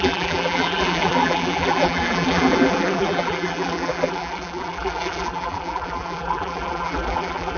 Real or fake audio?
fake